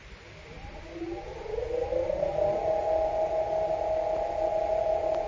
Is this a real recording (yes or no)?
yes